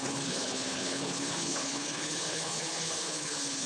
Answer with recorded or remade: remade